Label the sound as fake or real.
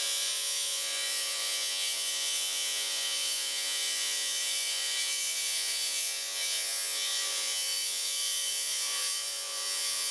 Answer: fake